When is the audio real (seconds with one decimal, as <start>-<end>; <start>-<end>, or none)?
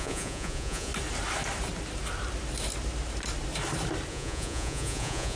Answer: 0.9-4.1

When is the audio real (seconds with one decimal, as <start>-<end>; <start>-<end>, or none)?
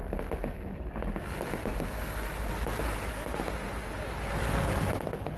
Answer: 0.0-5.4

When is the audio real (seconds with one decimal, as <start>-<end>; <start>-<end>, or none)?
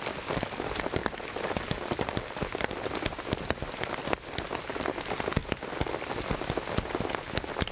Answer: 5.4-7.7